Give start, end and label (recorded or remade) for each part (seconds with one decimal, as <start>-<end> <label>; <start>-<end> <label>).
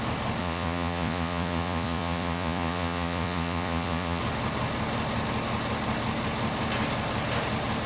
0.0-0.4 recorded; 0.4-4.2 remade; 4.2-7.9 recorded